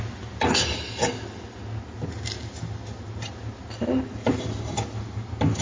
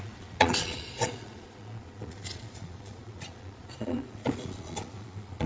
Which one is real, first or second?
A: first